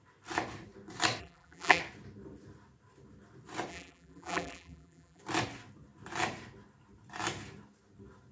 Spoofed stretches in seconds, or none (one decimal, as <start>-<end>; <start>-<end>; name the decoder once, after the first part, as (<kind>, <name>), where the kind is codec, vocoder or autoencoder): 1.2-1.8 (vocoder, BigVGAN v2); 3.7-5.2